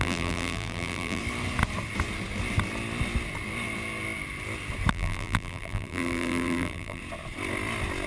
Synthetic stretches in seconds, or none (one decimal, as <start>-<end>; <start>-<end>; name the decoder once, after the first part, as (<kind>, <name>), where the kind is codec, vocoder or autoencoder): 0.0-1.2 (vocoder, BigVGAN v2); 4.9-7.0